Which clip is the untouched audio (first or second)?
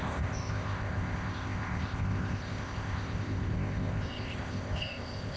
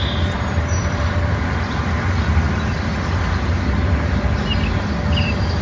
second